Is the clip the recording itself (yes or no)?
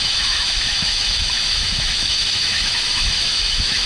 no